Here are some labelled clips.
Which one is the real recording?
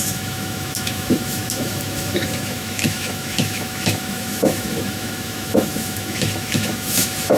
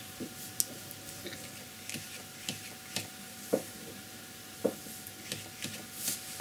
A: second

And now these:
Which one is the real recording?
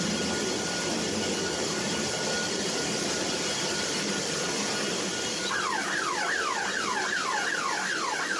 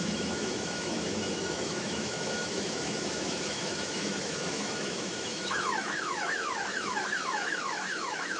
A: first